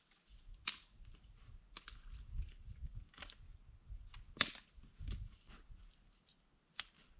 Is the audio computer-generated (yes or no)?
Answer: no